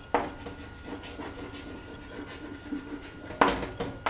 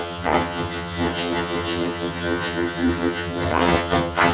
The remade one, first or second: second